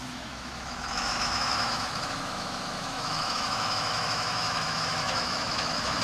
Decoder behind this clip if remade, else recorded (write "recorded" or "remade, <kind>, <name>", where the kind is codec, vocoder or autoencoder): remade, autoencoder, DAC-VAE